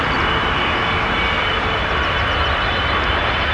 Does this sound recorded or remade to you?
recorded